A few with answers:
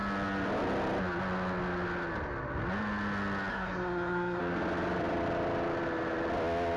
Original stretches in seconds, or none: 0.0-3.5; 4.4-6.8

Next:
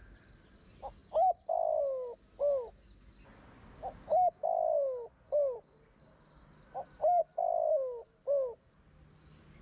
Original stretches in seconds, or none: 0.0-9.6

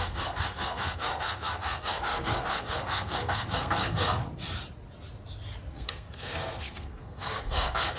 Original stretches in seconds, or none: 4.2-5.7

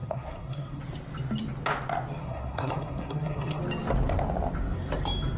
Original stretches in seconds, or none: 0.8-2.2; 3.6-5.4

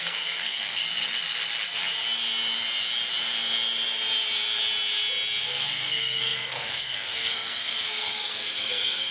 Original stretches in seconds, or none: 0.8-5.4

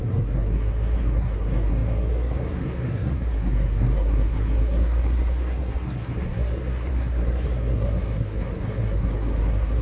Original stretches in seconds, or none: none

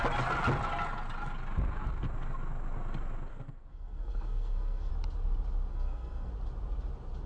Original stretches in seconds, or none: 0.0-3.3; 4.9-5.7; 6.3-7.3